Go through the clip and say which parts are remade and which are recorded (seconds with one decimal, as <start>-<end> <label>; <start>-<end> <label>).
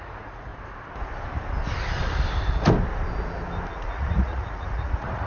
0.0-0.5 remade; 0.5-3.7 recorded; 3.7-5.3 remade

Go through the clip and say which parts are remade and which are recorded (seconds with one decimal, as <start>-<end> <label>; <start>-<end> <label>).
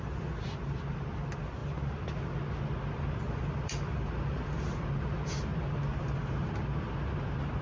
0.0-7.6 recorded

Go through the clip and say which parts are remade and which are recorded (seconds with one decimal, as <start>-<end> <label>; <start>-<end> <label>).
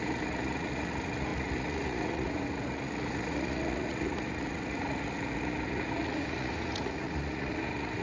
0.0-8.0 remade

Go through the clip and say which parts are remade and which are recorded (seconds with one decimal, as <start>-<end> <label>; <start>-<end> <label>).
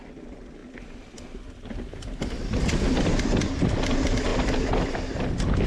0.0-5.7 recorded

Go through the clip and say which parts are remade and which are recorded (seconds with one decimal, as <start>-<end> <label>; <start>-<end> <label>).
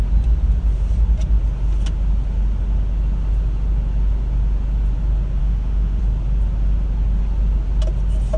0.0-5.4 recorded; 5.4-6.0 remade; 6.0-8.4 recorded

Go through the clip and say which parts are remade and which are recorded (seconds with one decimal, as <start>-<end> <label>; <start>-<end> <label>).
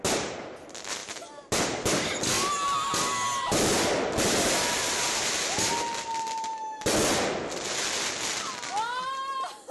0.0-9.7 recorded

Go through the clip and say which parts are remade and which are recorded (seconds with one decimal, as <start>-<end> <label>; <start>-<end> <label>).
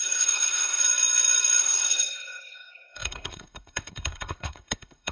0.0-0.8 remade; 0.8-1.6 recorded; 1.6-5.1 remade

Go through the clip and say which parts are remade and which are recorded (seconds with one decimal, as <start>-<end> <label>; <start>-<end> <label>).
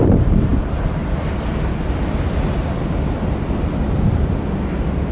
0.0-5.1 recorded